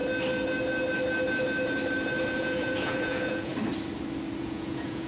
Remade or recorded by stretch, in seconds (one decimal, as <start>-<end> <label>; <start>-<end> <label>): 0.0-2.4 recorded; 2.4-3.5 remade; 3.5-4.4 recorded; 4.4-5.1 remade